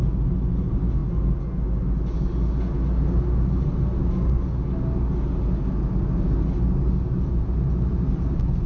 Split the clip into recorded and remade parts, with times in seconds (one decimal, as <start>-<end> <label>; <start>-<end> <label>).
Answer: 0.0-8.7 recorded